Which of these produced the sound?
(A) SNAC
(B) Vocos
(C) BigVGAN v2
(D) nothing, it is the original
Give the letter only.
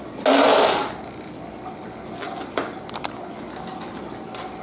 D